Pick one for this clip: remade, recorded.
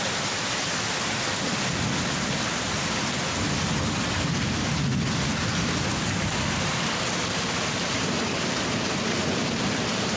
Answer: recorded